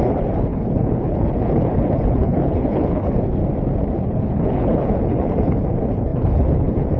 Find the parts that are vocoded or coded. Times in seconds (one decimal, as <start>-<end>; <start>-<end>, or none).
0.0-3.4; 3.9-7.0